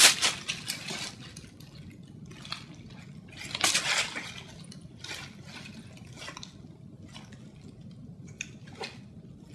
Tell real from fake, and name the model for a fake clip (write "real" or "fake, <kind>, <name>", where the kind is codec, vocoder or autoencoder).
real